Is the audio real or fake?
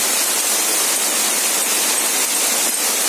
real